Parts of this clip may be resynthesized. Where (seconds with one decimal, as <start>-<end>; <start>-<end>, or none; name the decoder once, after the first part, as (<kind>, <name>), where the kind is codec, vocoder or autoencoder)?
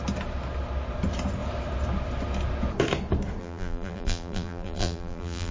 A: 3.4-5.5 (vocoder, BigVGAN v2)